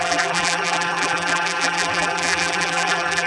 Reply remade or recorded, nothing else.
remade